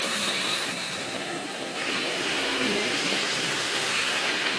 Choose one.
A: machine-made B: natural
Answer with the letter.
A